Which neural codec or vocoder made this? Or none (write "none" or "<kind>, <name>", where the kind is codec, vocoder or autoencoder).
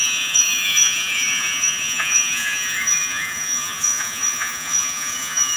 vocoder, Vocos